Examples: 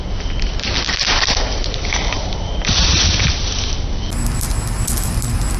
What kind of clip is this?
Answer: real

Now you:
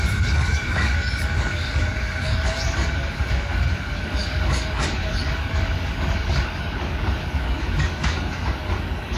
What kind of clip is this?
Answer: fake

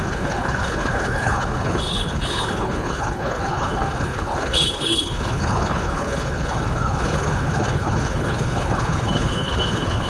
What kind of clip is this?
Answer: fake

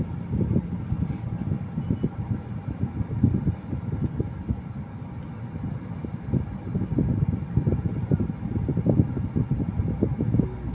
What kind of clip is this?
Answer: real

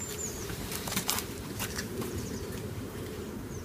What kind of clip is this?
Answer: fake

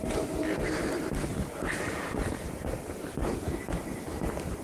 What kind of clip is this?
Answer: fake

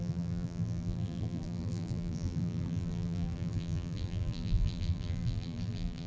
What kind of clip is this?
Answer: fake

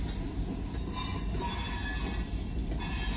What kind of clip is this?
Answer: real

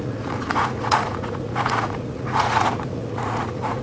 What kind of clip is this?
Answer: fake